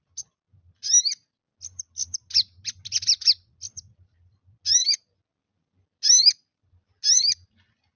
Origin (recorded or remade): recorded